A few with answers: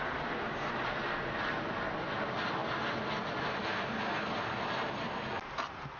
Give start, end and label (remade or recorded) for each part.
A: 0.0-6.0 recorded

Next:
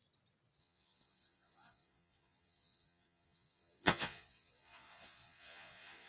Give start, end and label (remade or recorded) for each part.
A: 0.0-0.6 recorded; 0.6-6.1 remade